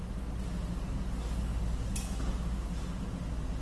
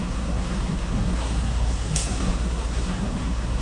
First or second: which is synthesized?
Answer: second